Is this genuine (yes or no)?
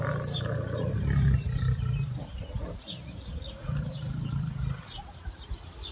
yes